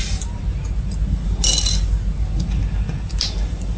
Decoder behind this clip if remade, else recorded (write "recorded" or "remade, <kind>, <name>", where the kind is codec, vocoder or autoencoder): recorded